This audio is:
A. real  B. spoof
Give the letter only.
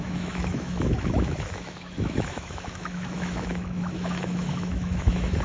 B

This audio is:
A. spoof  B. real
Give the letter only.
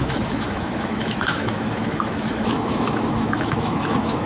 A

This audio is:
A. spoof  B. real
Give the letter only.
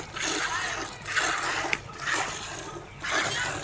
B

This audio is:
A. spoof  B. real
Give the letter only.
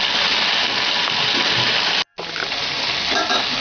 B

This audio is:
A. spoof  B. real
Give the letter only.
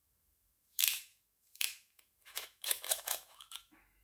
A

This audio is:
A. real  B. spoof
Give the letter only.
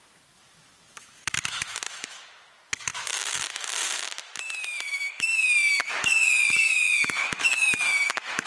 B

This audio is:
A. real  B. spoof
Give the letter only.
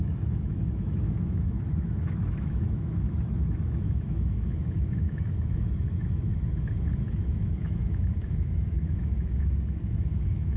B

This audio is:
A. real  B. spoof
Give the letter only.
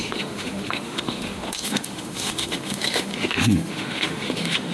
B